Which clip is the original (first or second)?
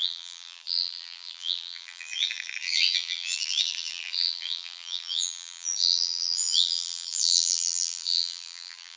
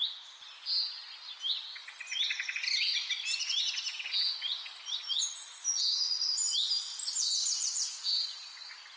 second